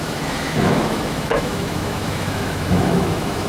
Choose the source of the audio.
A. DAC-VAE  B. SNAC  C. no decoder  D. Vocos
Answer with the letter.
A